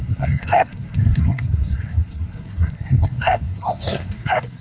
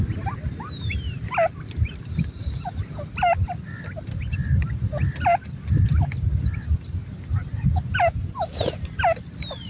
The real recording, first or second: second